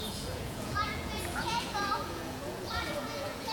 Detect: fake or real fake